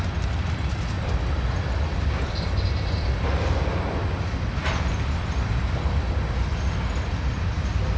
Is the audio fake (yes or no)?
no